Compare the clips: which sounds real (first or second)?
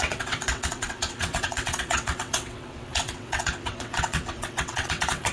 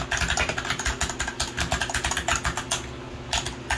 second